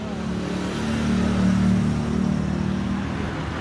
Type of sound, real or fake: real